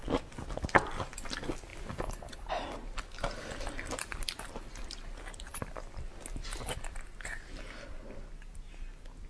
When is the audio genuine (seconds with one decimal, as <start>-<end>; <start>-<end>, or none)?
0.0-4.1; 4.6-5.5; 6.1-9.3